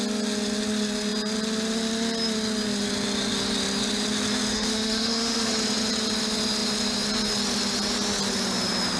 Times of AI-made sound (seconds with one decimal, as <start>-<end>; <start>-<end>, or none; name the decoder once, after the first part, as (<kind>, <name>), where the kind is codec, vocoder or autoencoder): 4.5-5.5 (autoencoder, DAC-VAE)